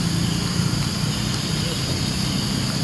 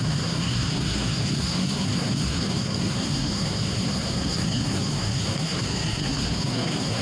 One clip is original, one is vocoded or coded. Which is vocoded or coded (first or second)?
second